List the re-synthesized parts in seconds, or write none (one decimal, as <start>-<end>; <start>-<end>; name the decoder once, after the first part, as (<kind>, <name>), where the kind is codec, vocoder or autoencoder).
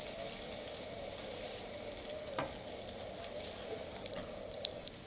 4.2-5.1 (vocoder, BigVGAN v2)